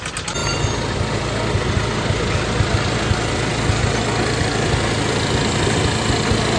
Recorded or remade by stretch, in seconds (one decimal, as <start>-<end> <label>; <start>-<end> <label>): 0.0-0.4 recorded; 0.4-1.2 remade; 1.2-1.8 recorded; 1.8-2.7 remade; 2.7-6.6 recorded